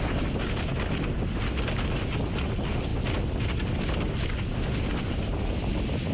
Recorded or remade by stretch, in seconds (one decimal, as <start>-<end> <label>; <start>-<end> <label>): 0.0-6.1 recorded

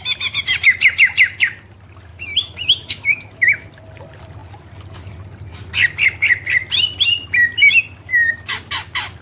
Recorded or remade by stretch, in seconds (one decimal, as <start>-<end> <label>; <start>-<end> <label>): 0.0-2.1 recorded; 2.1-3.7 remade; 3.7-9.2 recorded

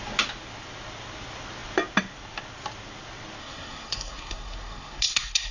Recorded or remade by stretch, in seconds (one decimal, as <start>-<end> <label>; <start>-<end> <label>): 0.0-3.4 recorded; 3.4-5.5 remade

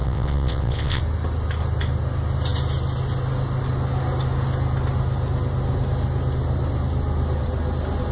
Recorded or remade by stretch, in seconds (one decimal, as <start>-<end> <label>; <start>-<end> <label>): 0.0-1.0 remade; 1.0-8.1 recorded

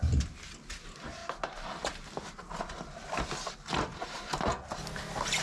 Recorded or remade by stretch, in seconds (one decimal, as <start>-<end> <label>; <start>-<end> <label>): 0.0-5.4 recorded

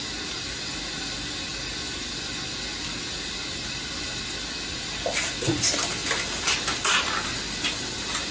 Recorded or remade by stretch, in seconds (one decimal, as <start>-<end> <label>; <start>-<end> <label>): 0.0-8.3 recorded